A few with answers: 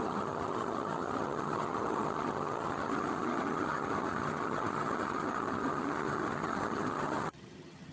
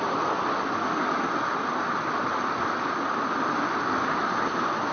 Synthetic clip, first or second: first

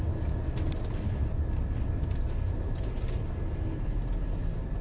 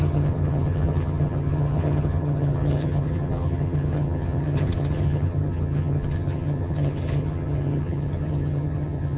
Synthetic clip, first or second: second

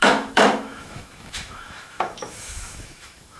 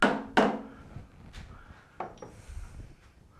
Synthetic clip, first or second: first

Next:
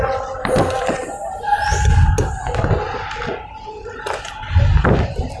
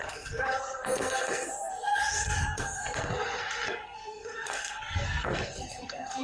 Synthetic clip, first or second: second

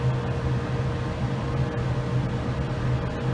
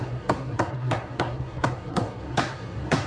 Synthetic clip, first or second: second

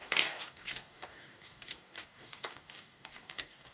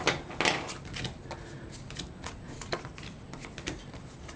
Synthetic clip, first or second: first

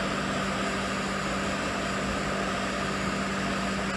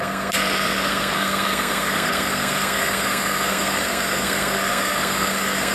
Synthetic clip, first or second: second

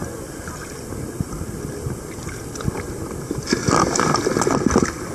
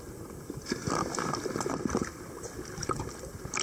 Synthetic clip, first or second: second